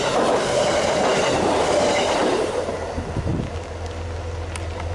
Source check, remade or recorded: recorded